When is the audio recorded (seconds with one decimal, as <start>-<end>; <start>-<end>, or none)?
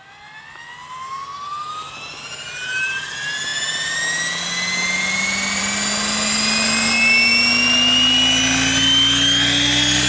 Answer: 0.0-10.1